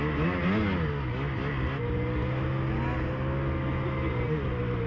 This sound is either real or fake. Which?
real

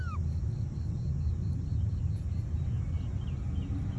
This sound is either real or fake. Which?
real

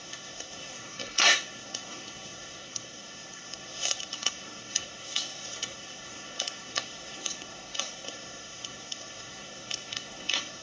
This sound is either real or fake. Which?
fake